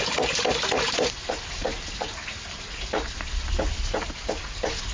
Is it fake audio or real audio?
real